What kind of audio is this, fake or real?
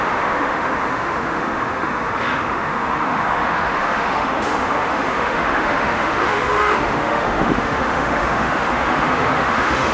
fake